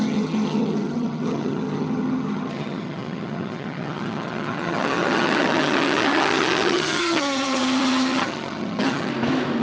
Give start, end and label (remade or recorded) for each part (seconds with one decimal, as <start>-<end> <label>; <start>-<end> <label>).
0.0-9.1 remade; 9.1-9.6 recorded